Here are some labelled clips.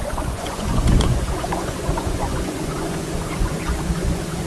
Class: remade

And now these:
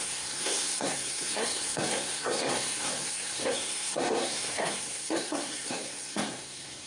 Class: remade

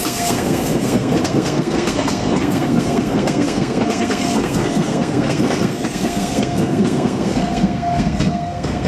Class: remade